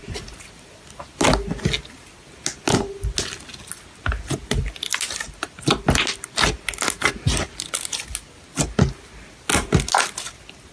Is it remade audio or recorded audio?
recorded